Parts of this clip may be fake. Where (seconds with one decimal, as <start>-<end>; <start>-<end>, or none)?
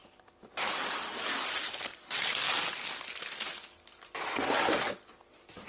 0.0-0.7